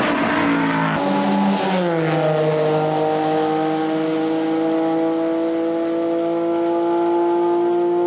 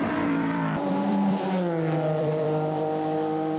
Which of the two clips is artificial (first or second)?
second